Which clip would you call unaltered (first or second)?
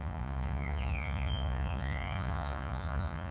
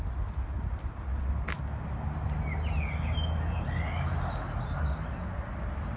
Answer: second